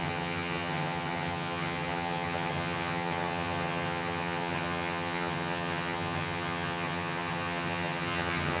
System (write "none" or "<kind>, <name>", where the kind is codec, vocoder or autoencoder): vocoder, HiFi-GAN